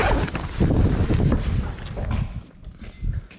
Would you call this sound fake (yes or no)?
no